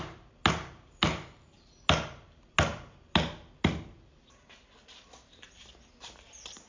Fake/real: real